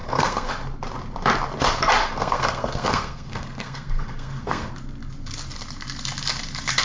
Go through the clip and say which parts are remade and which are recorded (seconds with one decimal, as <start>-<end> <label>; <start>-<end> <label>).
0.0-0.5 remade; 0.5-2.0 recorded; 2.0-4.7 remade; 4.7-6.8 recorded